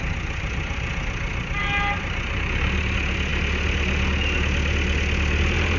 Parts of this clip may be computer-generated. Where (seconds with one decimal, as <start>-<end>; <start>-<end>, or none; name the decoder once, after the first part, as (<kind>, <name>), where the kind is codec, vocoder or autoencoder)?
none